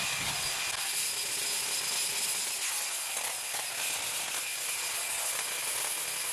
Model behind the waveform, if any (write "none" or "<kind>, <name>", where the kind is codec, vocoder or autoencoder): none